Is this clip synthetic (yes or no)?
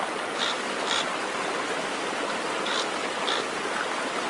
no